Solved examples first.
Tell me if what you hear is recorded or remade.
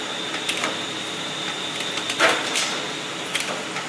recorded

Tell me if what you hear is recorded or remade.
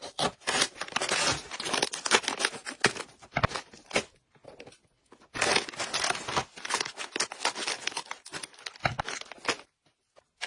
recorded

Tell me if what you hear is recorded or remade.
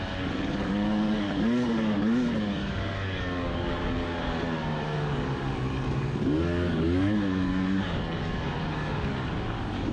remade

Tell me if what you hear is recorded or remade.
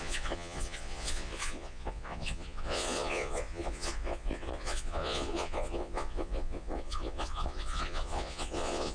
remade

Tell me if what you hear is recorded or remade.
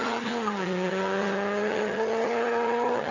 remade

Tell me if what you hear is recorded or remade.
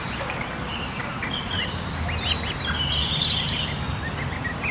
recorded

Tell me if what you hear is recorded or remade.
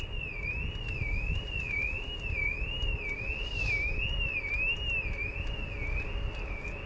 recorded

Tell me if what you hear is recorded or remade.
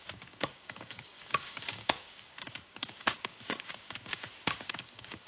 remade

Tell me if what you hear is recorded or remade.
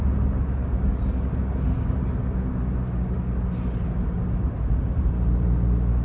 recorded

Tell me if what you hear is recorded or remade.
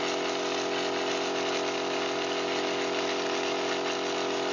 recorded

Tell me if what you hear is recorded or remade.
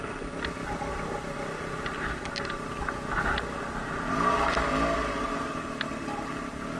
recorded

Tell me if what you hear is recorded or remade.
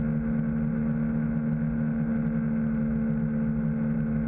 recorded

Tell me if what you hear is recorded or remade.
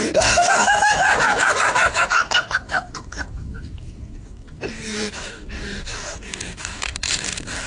remade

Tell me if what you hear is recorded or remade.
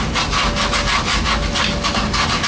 recorded